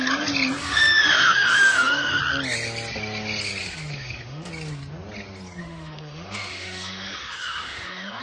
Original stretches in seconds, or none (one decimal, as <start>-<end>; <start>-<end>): 0.0-0.6; 2.2-3.6; 4.5-5.6